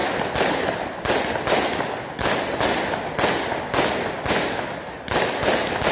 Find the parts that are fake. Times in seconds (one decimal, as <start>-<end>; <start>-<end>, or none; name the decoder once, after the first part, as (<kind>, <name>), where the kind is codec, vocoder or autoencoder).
none